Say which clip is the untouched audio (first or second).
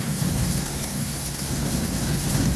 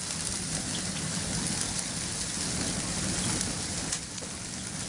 second